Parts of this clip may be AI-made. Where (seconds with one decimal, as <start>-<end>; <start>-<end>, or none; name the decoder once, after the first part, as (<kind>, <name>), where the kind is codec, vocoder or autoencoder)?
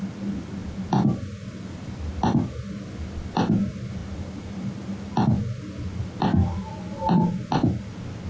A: none